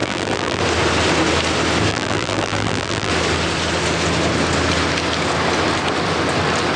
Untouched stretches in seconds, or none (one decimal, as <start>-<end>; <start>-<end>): 0.6-1.9; 3.1-6.8